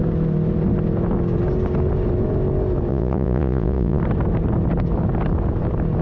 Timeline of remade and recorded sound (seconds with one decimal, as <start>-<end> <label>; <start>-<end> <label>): 0.0-2.9 recorded; 2.9-4.0 remade; 4.0-6.0 recorded